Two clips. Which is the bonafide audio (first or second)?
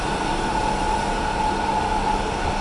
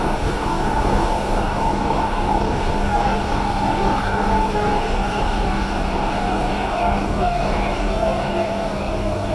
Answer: first